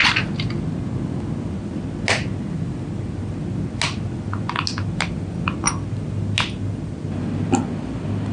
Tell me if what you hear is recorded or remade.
recorded